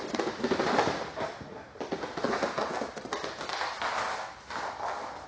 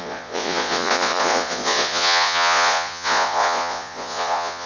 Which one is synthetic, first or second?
second